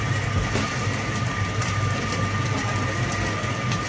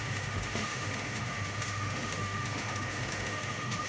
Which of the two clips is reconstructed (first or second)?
second